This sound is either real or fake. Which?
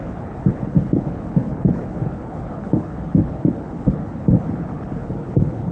fake